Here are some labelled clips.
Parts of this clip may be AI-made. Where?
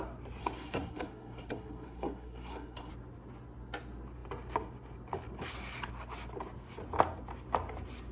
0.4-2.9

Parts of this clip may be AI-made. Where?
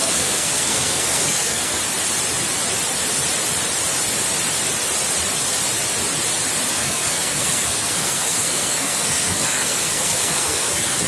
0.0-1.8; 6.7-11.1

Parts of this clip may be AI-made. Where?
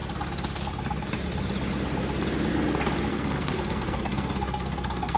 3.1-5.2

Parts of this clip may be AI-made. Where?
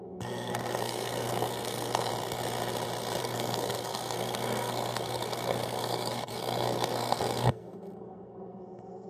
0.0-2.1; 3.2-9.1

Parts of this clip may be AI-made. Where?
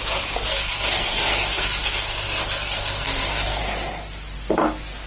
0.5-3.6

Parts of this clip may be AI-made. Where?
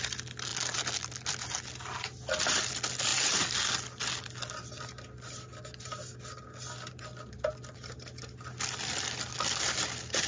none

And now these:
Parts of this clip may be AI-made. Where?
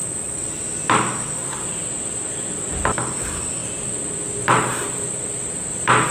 none